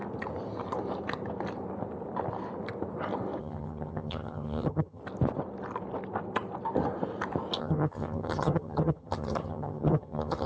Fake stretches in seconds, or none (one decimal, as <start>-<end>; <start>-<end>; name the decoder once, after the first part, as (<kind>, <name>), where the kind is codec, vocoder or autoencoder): 3.4-5.0 (vocoder, HiFi-GAN); 7.6-10.5